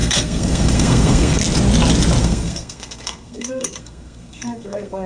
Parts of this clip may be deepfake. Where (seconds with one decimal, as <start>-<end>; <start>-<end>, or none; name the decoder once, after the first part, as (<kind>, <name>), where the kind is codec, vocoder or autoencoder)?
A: 0.0-1.4 (codec, SNAC); 2.2-5.1